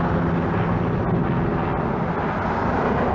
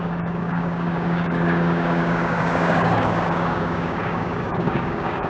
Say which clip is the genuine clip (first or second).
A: first